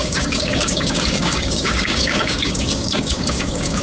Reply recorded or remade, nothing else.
remade